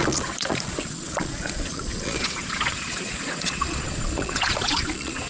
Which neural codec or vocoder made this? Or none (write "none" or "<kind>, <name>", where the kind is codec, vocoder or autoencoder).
vocoder, Vocos